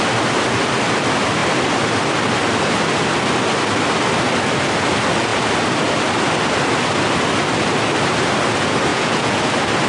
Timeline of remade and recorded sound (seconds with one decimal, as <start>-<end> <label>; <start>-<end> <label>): 0.0-8.9 recorded; 8.9-9.4 remade; 9.4-9.9 recorded